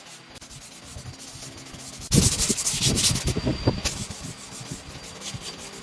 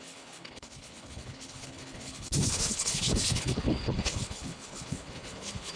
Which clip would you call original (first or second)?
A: first